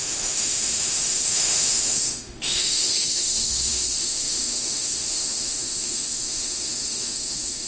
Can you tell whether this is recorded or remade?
remade